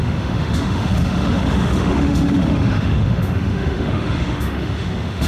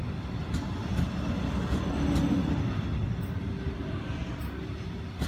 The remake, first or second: first